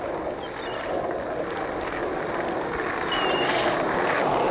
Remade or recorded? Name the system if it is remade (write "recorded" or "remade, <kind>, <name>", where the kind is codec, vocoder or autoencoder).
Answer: recorded